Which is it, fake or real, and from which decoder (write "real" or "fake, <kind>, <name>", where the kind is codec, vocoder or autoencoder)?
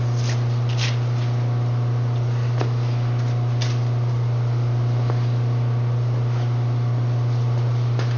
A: real